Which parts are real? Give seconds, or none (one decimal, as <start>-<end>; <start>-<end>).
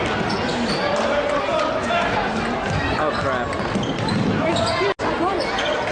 0.0-5.9